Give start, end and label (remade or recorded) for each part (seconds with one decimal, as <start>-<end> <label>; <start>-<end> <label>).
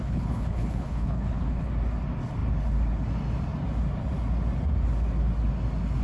0.0-1.7 remade; 1.7-6.0 recorded